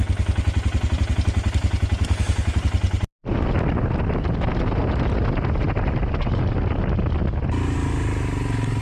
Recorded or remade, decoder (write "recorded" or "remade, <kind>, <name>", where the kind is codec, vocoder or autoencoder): recorded